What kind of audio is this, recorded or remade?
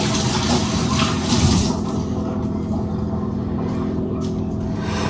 recorded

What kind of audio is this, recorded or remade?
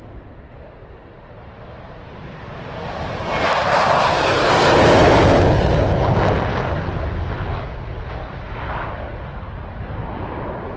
recorded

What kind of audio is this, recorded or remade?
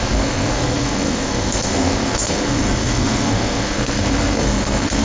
remade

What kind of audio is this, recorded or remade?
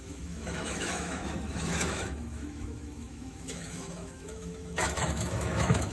remade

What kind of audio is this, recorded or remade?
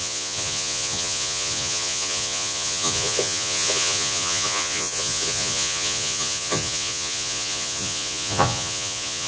remade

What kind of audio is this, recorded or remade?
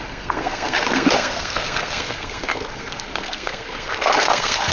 remade